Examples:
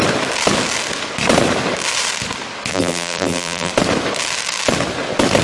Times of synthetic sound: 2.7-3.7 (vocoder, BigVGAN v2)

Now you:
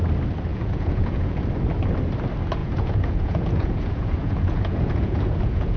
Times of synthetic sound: 0.5-1.4 (vocoder, Vocos); 2.6-5.8

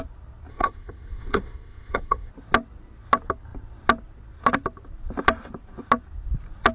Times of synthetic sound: 0.5-2.3 (codec, SNAC)

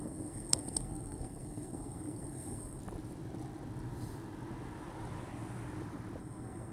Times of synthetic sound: 0.0-2.8 (codec, SNAC); 6.2-6.7

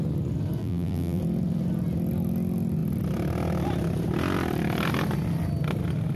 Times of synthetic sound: 0.6-1.2 (vocoder, BigVGAN v2)